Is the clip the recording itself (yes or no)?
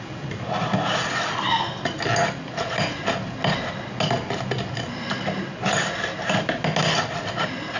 yes